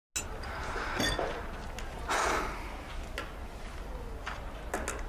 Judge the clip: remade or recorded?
recorded